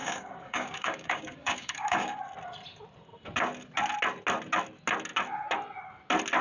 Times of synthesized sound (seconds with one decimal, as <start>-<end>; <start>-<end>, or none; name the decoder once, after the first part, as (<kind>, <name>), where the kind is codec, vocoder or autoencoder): 0.0-2.2 (codec, DAC)